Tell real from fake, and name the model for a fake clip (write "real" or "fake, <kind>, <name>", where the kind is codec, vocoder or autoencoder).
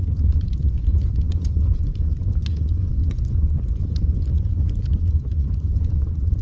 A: fake, vocoder, Vocos